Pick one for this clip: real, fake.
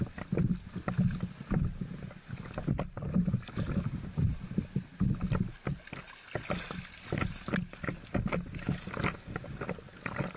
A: real